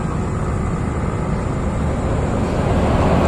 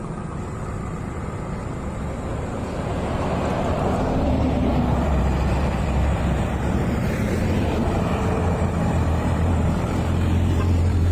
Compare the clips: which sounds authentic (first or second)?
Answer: first